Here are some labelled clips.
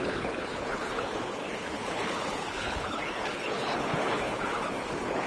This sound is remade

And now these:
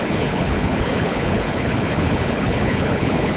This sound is remade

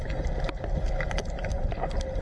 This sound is recorded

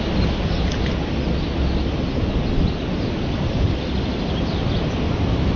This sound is recorded